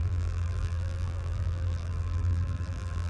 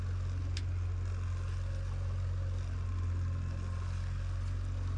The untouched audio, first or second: second